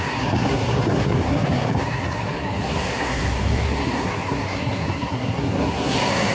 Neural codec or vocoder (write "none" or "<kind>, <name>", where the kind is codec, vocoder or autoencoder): codec, SNAC